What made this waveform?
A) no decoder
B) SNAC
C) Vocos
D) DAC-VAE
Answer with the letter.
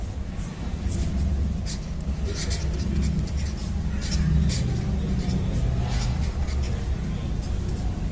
A